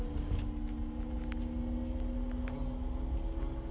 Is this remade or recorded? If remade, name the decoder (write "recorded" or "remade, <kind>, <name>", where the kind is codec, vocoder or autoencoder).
recorded